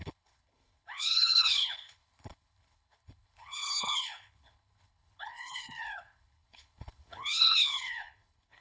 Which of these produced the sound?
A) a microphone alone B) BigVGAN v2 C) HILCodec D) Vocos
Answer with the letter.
C